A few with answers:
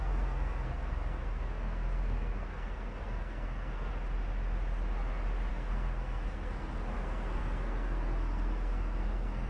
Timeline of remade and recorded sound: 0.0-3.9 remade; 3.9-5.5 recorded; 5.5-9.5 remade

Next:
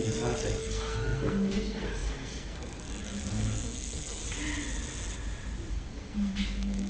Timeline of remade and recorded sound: 0.0-4.2 remade; 4.2-5.7 recorded; 5.7-6.9 remade

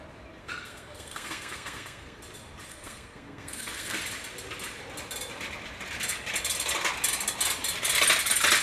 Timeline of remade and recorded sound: 0.0-0.4 recorded; 0.4-2.2 remade; 2.2-2.7 recorded; 2.7-4.0 remade; 4.0-8.6 recorded